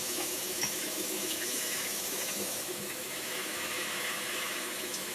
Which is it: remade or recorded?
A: remade